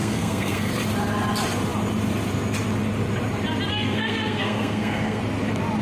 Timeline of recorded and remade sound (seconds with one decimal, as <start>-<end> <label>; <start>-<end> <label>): 0.0-0.7 remade; 0.7-3.7 recorded; 3.7-5.2 remade; 5.2-5.8 recorded